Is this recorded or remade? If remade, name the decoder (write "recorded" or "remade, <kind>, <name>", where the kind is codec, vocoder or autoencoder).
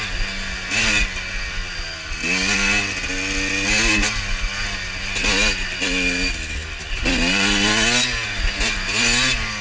recorded